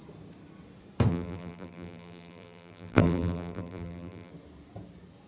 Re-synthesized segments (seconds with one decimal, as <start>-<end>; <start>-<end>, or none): 1.1-4.3